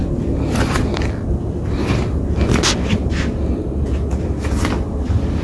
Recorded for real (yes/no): yes